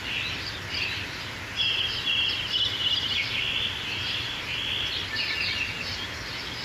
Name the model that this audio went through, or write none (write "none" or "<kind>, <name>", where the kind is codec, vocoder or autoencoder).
none